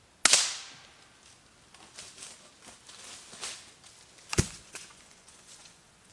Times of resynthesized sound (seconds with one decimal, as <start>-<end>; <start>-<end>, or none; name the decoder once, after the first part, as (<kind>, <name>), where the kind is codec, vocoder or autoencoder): 4.3-6.1 (vocoder, Vocos)